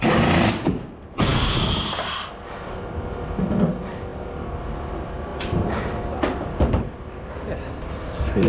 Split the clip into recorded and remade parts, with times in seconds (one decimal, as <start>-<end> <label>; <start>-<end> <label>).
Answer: 0.0-1.3 recorded; 1.3-2.3 remade; 2.3-8.5 recorded